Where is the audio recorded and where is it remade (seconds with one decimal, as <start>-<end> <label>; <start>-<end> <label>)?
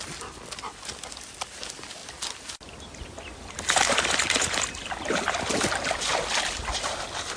0.0-7.4 recorded